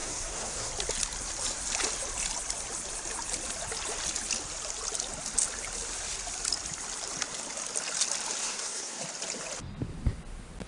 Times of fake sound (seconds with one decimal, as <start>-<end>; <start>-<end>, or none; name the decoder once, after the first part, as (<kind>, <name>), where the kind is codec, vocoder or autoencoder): 0.0-0.7 (codec, SNAC); 8.4-9.0